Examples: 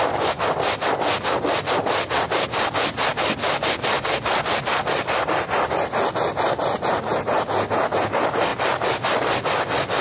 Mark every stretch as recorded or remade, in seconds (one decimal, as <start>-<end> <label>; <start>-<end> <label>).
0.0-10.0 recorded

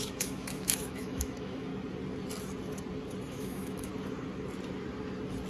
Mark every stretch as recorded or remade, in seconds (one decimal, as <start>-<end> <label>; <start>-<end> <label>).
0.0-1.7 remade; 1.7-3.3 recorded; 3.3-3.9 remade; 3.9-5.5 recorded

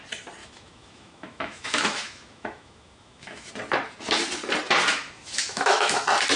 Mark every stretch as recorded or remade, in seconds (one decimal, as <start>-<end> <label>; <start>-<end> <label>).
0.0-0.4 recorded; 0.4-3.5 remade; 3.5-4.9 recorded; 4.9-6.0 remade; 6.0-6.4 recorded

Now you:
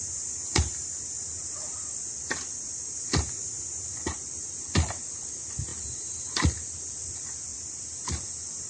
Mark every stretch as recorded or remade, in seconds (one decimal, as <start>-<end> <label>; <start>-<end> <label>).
0.0-8.7 recorded